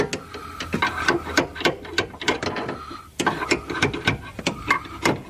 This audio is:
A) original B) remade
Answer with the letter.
A